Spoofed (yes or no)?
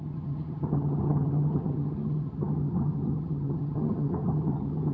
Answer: yes